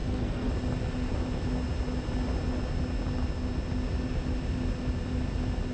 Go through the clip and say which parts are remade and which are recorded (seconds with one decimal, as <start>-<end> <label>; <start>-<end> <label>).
0.0-0.5 remade; 0.5-5.7 recorded